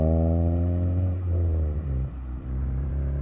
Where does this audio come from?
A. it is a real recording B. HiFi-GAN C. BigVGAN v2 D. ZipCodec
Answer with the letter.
C